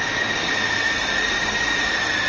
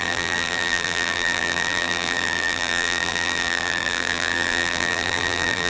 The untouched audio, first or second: first